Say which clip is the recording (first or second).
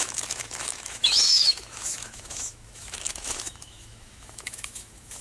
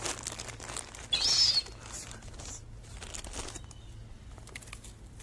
second